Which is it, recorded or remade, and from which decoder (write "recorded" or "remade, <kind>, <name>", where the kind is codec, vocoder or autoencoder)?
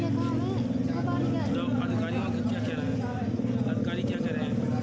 recorded